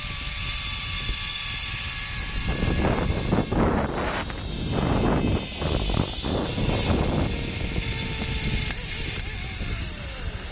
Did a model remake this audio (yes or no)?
no